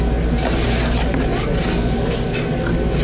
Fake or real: real